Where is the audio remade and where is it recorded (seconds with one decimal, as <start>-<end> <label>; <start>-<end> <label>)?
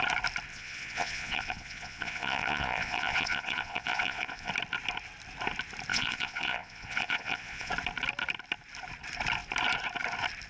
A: 0.0-0.5 recorded; 0.5-4.5 remade; 4.5-5.9 recorded; 5.9-7.7 remade; 7.7-10.5 recorded